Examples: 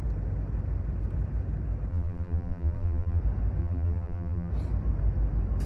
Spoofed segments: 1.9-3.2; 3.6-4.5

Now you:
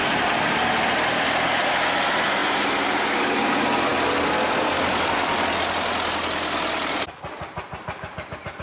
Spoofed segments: 0.0-0.7; 2.4-3.1

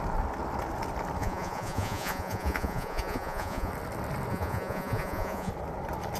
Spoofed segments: 1.2-3.7; 4.3-5.5

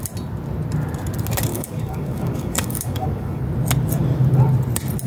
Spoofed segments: 1.5-3.4